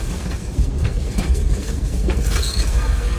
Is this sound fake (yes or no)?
yes